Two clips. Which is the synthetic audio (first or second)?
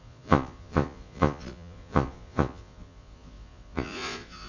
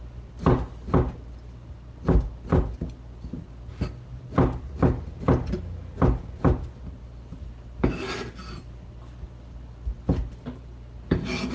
first